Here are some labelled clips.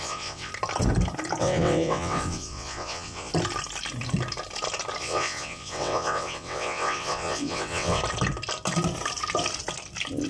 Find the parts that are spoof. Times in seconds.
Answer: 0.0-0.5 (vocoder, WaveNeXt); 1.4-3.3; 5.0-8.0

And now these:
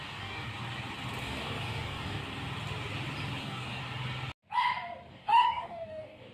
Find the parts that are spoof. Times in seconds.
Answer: 0.0-0.5 (codec, DAC); 1.2-2.2; 3.4-3.8; 5.1-6.3

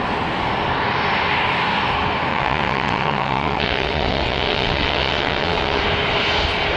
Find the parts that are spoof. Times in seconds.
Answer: 2.3-5.8 (vocoder, WaveNeXt)

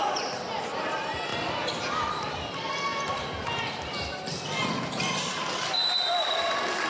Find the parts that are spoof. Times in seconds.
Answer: 0.0-6.9 (vocoder, BigVGAN v2)

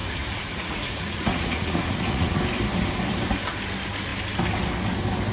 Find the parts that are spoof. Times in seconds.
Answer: 0.0-2.4 (vocoder, Vocos)

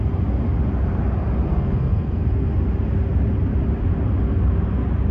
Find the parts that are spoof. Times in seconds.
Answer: 1.5-2.5 (codec, SNAC)

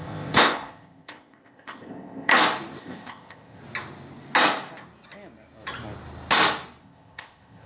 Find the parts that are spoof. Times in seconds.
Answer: 0.0-2.3 (codec, ZipCodec); 2.8-3.6; 6.8-7.7